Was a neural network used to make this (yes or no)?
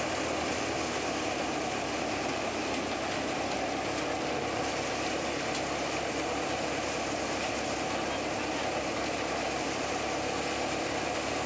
no